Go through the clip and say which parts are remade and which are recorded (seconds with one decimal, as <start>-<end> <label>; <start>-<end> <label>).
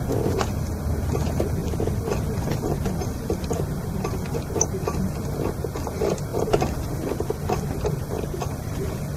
0.0-1.6 recorded; 1.6-4.0 remade; 4.0-6.3 recorded; 6.3-9.2 remade